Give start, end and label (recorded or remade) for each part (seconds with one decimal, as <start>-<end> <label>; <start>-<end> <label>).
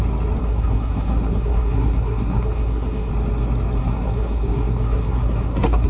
0.0-0.4 recorded; 0.4-3.1 remade; 3.1-3.8 recorded; 3.8-5.9 remade